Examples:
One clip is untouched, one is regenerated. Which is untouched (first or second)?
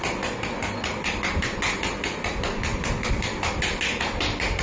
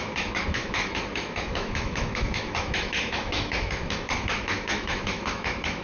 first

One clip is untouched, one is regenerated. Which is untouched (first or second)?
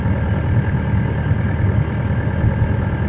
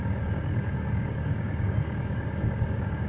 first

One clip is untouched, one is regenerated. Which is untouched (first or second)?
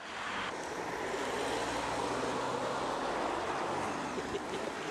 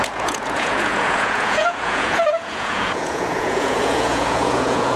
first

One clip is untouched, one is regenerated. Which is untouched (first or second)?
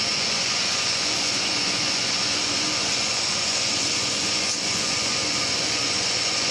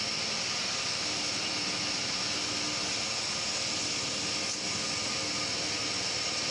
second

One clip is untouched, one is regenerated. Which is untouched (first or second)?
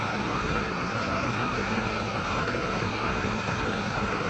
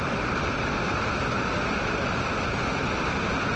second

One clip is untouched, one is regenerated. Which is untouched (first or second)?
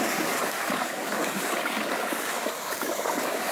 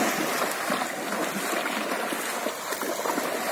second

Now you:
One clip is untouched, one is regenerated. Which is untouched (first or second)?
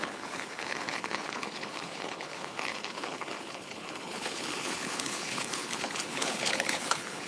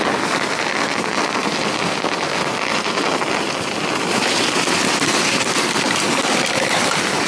second